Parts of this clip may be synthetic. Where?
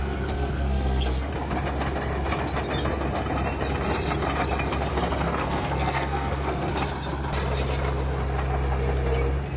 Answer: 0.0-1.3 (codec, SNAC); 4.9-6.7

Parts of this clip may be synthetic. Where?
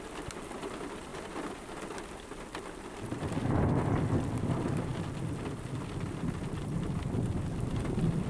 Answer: none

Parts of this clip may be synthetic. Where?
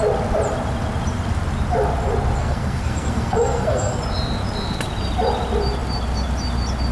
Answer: 2.4-4.0 (codec, SNAC)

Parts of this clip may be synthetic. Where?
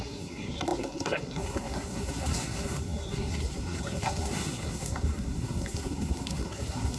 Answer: 0.0-7.0 (codec, SNAC)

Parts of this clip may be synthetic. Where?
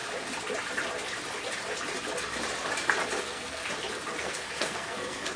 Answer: 3.2-3.6 (codec, SNAC); 4.2-5.4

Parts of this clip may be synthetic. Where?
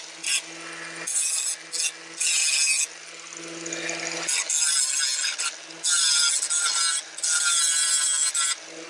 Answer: none